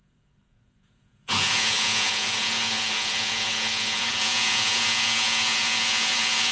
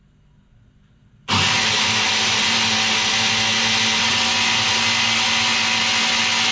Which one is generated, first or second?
first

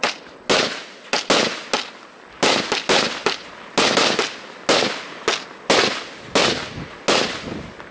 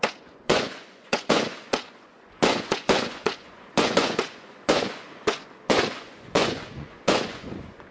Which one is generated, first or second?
second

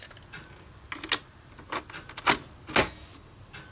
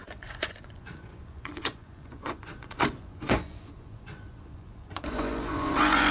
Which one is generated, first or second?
second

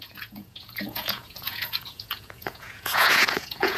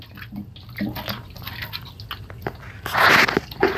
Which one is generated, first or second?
first